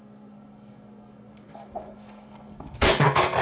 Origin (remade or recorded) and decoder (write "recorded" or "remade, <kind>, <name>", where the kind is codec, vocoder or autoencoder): remade, codec, SNAC